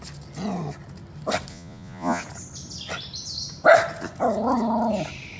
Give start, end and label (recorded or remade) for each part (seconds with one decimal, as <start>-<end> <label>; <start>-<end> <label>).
0.0-1.5 recorded; 1.5-2.2 remade; 2.2-5.4 recorded